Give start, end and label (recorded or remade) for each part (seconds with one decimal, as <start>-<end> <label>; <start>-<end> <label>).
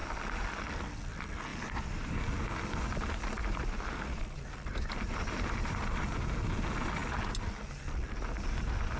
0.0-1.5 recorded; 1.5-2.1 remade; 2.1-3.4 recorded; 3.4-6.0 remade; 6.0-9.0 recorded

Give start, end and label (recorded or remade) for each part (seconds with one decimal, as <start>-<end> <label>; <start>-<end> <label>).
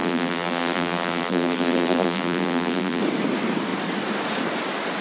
0.0-3.0 remade; 3.0-5.0 recorded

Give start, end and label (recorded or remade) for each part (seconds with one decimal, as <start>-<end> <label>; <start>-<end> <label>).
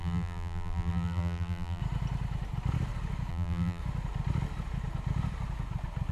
0.0-1.8 remade; 1.8-3.3 recorded; 3.3-3.8 remade; 3.8-6.1 recorded